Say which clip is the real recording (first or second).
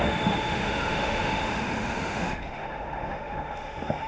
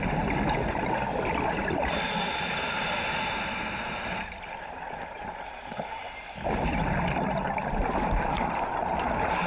second